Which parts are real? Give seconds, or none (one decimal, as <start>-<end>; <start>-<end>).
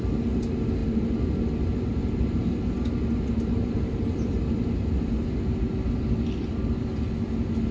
0.0-7.7